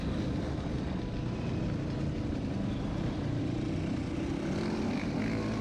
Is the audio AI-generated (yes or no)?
no